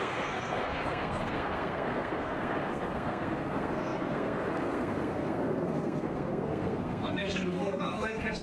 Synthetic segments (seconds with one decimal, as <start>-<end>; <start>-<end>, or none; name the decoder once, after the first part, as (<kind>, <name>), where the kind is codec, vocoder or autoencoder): 0.0-8.4 (codec, SNAC)